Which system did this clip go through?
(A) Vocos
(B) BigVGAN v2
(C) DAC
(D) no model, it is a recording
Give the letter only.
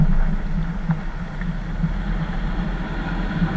D